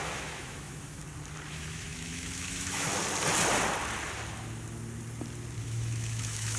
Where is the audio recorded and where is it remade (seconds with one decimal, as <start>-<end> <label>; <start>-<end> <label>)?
0.0-1.0 remade; 1.0-1.5 recorded; 1.5-2.9 remade; 2.9-5.6 recorded; 5.6-6.6 remade